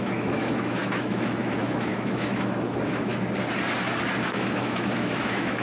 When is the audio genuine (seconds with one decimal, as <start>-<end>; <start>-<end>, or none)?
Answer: 3.1-4.2